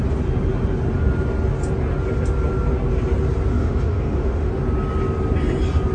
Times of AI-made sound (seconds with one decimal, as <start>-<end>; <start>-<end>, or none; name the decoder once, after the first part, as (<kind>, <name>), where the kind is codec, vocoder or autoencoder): 3.5-4.5 (autoencoder, DAC-VAE)